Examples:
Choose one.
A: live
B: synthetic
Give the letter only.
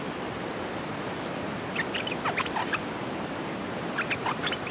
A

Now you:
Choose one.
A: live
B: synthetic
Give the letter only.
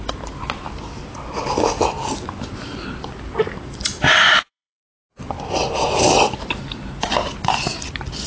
B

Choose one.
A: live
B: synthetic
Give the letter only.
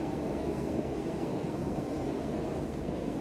B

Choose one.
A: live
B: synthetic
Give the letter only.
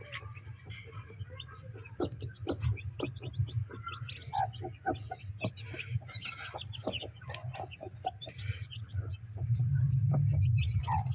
A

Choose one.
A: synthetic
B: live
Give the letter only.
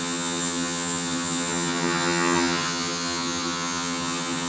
A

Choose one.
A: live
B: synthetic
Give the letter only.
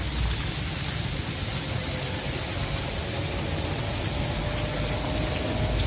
A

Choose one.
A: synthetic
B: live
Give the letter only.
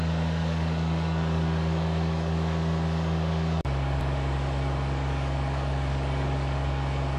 A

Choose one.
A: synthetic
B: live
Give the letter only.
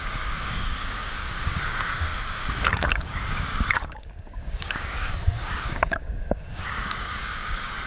A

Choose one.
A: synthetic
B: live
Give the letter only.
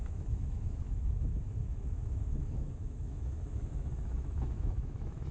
A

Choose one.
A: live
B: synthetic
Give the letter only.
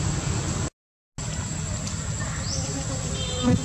A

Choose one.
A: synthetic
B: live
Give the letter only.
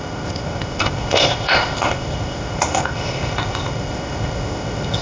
A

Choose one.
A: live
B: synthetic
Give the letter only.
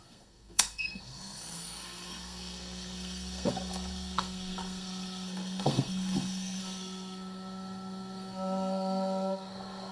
B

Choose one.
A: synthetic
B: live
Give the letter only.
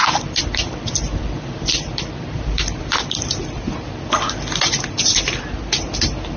A